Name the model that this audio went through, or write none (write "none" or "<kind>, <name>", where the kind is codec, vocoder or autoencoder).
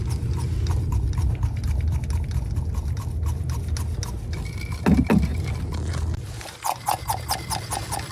none